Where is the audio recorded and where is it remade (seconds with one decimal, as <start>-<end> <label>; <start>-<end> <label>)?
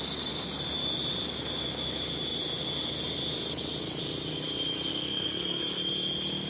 0.0-4.9 recorded; 4.9-5.6 remade; 5.6-6.5 recorded